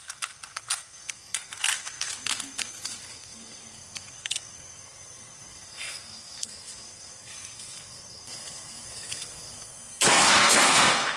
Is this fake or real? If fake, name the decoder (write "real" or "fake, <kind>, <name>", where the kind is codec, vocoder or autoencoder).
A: fake, codec, SNAC